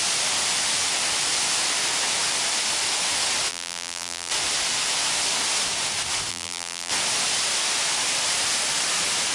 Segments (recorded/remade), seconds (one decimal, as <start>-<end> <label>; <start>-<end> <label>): 0.0-3.5 recorded; 3.5-4.3 remade; 4.3-6.3 recorded; 6.3-6.9 remade; 6.9-9.3 recorded